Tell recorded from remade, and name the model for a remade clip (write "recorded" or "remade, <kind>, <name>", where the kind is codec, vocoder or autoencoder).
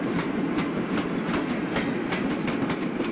recorded